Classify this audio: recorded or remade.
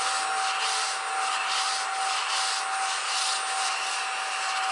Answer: recorded